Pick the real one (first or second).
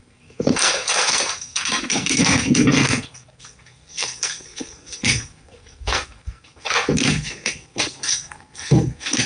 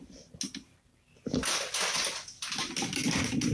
second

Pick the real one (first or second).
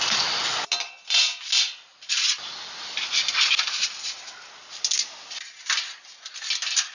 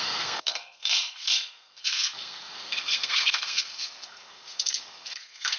first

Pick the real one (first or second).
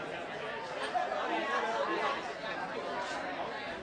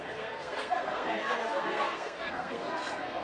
first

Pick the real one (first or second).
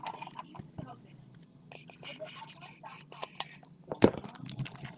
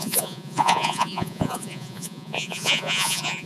first